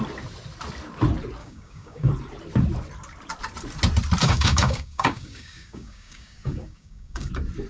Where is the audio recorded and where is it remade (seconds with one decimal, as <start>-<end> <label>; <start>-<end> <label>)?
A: 0.0-1.4 recorded; 1.4-2.1 remade; 2.1-4.2 recorded; 4.2-7.3 remade; 7.3-7.7 recorded

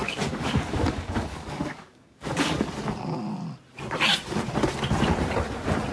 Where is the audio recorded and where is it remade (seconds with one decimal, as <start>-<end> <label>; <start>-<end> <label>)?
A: 0.0-2.7 remade; 2.7-5.9 recorded

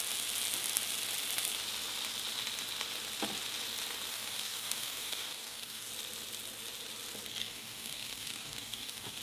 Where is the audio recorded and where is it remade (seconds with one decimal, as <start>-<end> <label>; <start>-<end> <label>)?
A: 0.0-4.1 recorded; 4.1-5.9 remade; 5.9-7.4 recorded; 7.4-9.2 remade

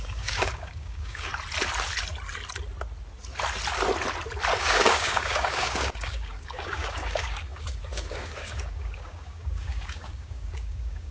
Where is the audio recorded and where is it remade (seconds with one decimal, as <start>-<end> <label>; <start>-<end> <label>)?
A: 0.0-1.3 remade; 1.3-4.6 recorded; 4.6-11.1 remade

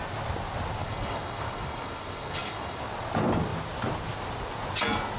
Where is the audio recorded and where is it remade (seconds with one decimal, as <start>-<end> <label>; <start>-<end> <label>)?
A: 0.0-0.8 recorded; 0.8-2.8 remade; 2.8-5.2 recorded

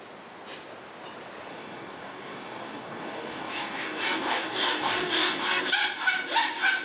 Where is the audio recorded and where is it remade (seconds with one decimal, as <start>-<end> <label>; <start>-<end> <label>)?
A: 0.0-1.5 recorded; 1.5-5.6 remade; 5.6-6.8 recorded

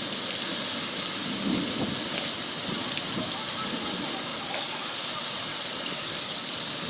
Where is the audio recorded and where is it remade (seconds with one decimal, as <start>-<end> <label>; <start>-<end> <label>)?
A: 0.0-4.3 recorded; 4.3-4.8 remade; 4.8-5.5 recorded; 5.5-6.9 remade